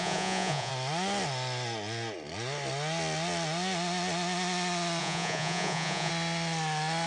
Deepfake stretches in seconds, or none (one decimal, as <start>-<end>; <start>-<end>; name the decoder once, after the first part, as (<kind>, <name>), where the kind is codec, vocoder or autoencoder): 0.0-0.7 (vocoder, Vocos); 5.0-6.1